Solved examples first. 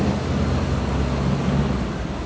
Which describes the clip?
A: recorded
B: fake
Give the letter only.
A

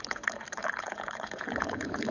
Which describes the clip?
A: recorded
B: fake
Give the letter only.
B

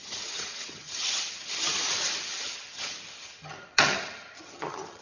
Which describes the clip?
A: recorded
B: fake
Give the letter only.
B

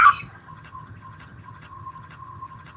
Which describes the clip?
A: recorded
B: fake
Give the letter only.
B